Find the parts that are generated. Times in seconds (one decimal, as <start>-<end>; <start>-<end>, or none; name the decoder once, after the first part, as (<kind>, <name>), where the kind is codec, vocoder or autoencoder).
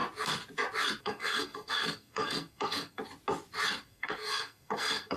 1.0-3.0 (codec, SNAC); 3.8-5.2